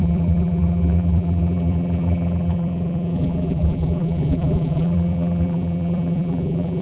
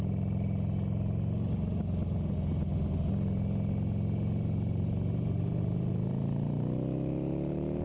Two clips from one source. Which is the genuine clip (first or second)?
second